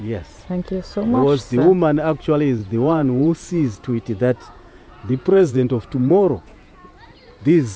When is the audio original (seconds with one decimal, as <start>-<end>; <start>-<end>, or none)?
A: 0.0-2.6; 6.9-7.8